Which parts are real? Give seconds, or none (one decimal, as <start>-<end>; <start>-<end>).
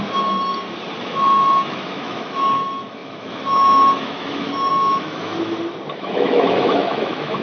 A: 0.5-1.0; 5.3-6.0